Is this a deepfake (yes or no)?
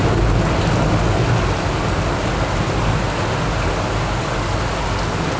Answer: no